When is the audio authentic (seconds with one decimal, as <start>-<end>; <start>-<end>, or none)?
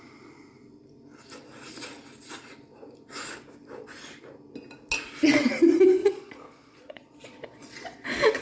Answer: 0.0-6.0